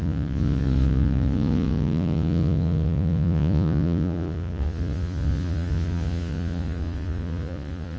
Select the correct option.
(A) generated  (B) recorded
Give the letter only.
A